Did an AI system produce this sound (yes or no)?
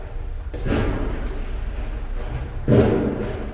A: no